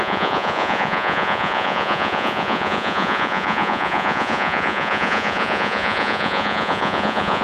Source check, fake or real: fake